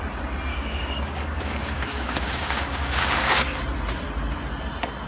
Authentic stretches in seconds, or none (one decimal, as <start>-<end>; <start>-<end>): 0.0-0.5; 3.6-5.1